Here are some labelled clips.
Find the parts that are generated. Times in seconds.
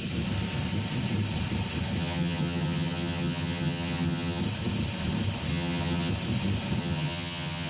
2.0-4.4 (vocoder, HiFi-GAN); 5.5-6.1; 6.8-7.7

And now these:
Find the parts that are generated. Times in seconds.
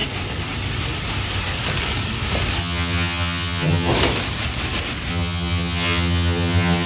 2.6-3.9 (vocoder, HiFi-GAN); 5.1-6.9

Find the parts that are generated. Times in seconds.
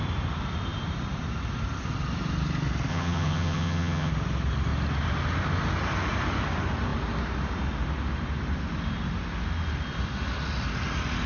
2.9-4.1 (vocoder, HiFi-GAN)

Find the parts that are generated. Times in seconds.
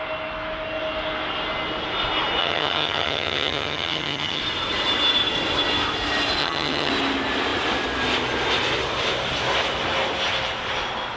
2.4-4.4 (vocoder, HiFi-GAN); 6.4-6.9